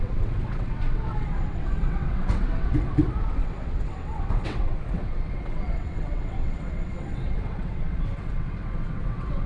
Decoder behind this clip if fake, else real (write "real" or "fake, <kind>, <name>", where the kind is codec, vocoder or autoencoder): fake, vocoder, WaveNeXt